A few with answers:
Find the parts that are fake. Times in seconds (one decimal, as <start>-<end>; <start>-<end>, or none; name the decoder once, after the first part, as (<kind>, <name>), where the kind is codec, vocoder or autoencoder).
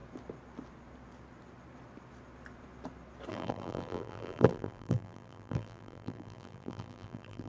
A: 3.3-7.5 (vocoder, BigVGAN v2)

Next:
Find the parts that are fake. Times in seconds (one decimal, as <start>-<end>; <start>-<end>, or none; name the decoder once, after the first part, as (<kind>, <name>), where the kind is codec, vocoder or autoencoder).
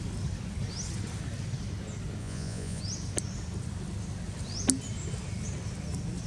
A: 2.2-2.8 (vocoder, Vocos)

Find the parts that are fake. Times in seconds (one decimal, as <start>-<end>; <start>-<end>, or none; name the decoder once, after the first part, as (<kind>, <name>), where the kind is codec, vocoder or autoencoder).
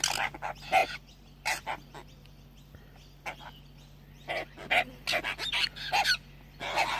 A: none